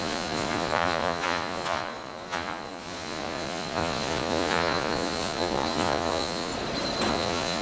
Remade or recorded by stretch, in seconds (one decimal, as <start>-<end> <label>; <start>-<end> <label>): 0.0-6.5 remade; 6.5-7.1 recorded; 7.1-7.6 remade